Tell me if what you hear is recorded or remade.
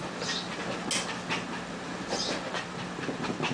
recorded